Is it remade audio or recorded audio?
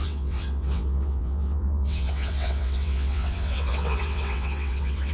remade